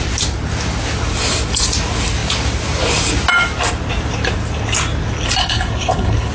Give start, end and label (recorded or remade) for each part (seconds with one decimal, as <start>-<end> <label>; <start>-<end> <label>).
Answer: 0.0-5.4 recorded; 5.4-6.3 remade